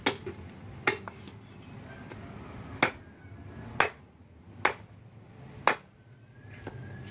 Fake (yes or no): no